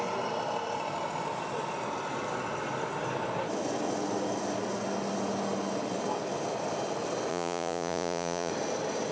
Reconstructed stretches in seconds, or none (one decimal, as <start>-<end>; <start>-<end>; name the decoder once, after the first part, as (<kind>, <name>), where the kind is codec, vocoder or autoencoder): 7.3-8.5 (vocoder, Vocos)